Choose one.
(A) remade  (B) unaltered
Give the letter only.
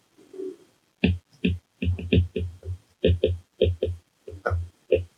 B